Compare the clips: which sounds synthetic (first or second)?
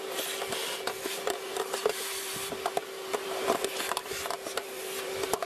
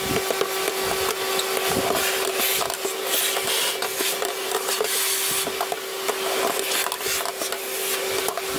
first